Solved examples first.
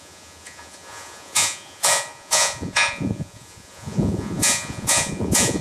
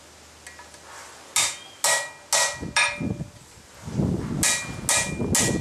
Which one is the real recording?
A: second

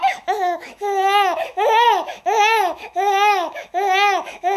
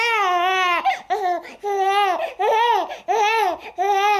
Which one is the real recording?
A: second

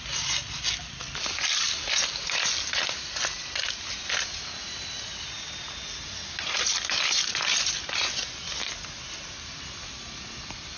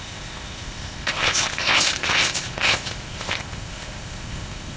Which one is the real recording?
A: first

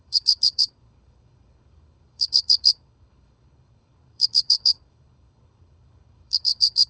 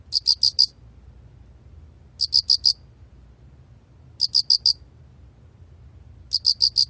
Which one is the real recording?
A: second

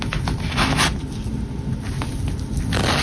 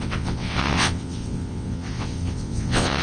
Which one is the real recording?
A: first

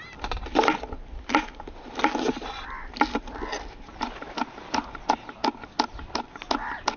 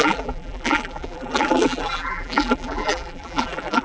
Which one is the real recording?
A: first